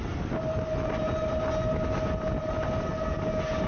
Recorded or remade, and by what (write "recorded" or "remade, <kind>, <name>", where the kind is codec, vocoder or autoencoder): recorded